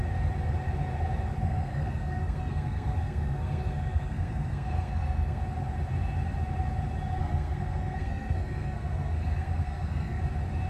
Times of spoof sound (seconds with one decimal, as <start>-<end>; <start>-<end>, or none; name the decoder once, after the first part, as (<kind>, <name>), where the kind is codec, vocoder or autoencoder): 1.4-5.4 (codec, SNAC); 7.2-10.2